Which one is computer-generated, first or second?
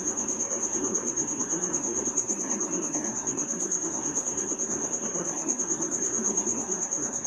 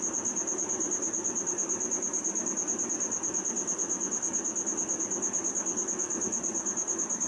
first